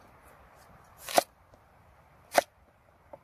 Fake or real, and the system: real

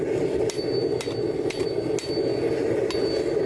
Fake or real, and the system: real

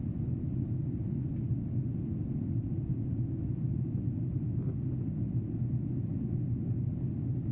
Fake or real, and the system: real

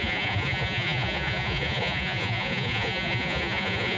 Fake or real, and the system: fake, vocoder, Vocos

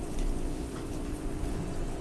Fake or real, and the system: fake, vocoder, Vocos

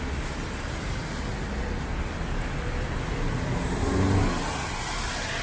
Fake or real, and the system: real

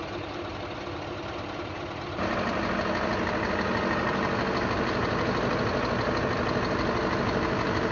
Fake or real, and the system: real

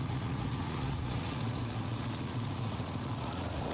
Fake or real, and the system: fake, vocoder, Vocos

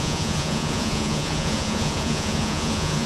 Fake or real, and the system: fake, vocoder, Vocos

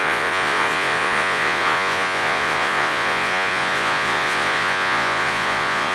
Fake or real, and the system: fake, vocoder, Vocos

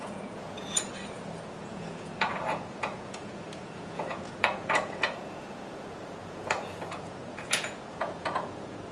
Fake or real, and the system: fake, vocoder, Vocos